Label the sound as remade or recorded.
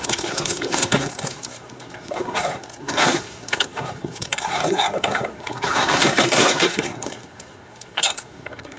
remade